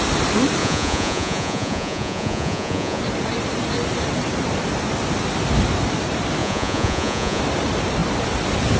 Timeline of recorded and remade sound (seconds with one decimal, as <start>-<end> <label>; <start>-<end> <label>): 0.0-0.6 recorded; 0.6-3.0 remade; 3.0-6.4 recorded; 6.4-7.4 remade; 7.4-8.8 recorded